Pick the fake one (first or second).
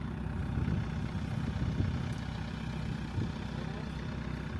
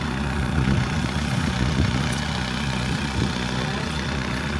second